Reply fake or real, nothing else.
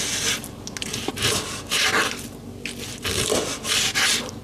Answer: real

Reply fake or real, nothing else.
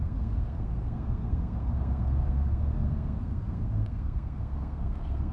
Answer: fake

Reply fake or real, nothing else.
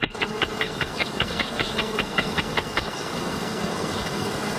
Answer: fake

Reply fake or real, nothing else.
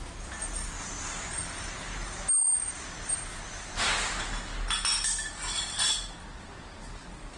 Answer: real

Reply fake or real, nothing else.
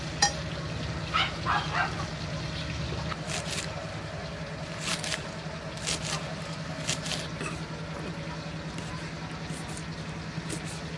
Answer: real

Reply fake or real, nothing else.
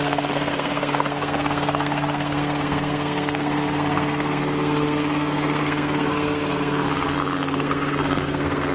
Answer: fake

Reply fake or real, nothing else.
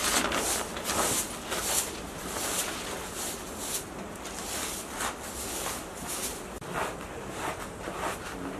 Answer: real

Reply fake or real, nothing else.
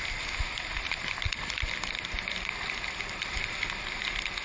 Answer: real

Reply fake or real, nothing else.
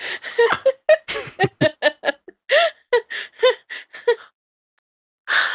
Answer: real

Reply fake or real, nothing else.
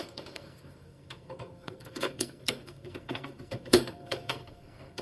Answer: fake